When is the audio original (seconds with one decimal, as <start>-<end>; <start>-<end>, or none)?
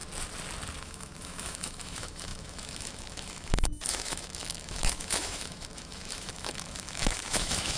0.0-0.8